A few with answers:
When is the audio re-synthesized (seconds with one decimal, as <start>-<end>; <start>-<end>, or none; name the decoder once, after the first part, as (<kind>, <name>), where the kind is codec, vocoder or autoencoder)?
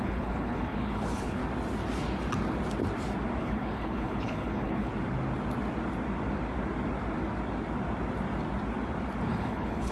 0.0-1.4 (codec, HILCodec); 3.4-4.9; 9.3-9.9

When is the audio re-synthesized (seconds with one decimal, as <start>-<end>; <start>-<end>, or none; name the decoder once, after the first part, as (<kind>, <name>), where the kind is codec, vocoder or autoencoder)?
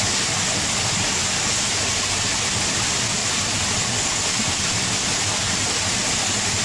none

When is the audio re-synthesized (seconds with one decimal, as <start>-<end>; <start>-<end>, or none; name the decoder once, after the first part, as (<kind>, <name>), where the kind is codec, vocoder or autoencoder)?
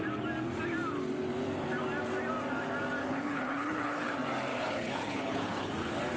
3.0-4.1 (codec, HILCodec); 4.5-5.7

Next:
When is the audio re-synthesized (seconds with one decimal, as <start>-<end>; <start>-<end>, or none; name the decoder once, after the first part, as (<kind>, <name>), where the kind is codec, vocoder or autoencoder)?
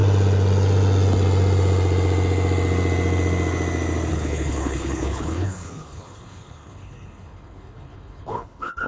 4.1-8.9 (codec, HILCodec)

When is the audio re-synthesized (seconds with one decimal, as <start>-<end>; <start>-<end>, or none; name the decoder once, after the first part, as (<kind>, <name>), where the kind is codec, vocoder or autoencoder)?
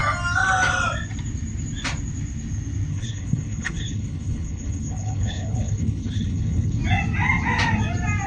2.9-6.8 (codec, HILCodec)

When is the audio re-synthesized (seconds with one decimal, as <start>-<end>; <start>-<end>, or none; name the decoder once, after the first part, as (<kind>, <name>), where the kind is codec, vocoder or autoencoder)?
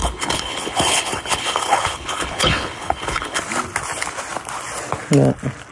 0.0-3.4 (codec, HILCodec)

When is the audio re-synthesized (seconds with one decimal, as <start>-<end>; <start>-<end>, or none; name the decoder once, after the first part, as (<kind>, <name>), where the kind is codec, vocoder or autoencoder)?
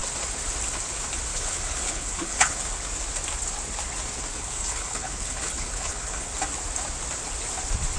1.3-2.6 (codec, HILCodec); 4.3-6.3